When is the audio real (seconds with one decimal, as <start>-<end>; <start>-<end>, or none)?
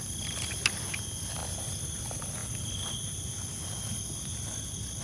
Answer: 0.0-5.0